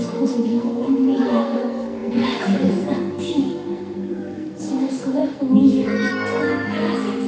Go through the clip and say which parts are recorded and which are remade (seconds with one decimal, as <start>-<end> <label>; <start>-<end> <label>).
0.0-7.3 remade